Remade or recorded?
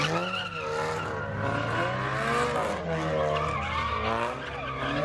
recorded